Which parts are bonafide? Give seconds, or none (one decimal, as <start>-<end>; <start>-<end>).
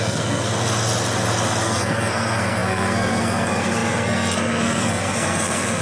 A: 0.5-1.6